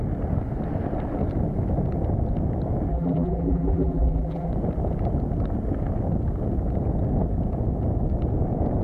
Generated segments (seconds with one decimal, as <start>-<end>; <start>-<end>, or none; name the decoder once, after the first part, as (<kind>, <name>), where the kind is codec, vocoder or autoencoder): 2.9-4.5 (vocoder, BigVGAN v2)